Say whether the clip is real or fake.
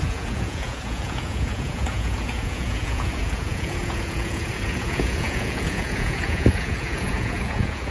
fake